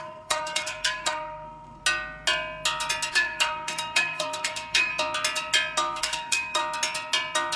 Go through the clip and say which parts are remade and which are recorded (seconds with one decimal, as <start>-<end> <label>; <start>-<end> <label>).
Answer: 0.0-1.8 remade; 1.8-3.1 recorded; 3.1-4.9 remade; 4.9-6.0 recorded; 6.0-6.6 remade; 6.6-7.6 recorded